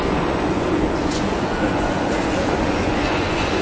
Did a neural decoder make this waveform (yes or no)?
yes